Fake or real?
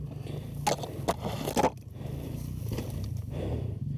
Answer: real